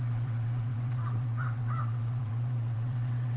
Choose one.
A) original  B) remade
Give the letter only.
B